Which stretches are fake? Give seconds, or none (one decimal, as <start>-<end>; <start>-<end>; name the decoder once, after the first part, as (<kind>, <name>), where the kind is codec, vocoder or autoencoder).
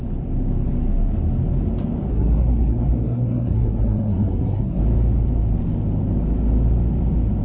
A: 2.1-4.8 (codec, SNAC)